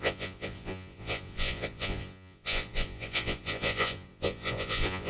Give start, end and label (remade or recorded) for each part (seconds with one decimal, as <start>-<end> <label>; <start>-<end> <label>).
0.0-5.1 remade